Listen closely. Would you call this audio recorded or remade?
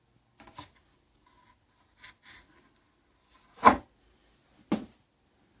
recorded